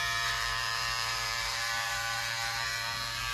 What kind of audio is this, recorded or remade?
remade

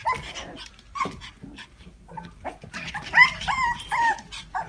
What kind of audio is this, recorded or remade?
remade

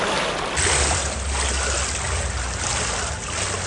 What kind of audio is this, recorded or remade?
recorded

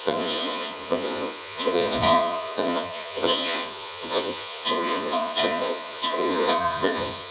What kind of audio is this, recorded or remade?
remade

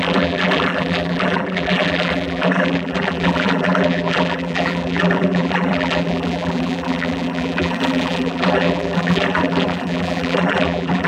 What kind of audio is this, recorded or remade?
remade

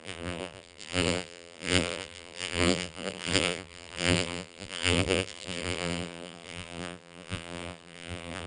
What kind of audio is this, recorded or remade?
remade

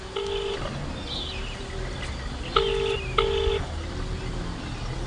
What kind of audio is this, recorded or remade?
recorded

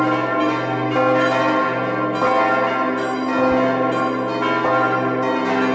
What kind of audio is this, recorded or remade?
recorded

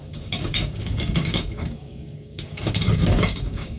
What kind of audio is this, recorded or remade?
remade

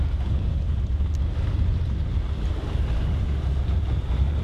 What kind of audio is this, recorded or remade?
recorded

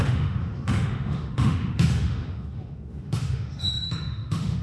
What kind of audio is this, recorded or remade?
remade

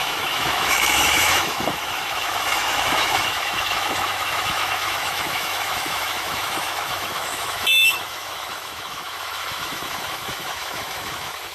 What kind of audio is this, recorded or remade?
remade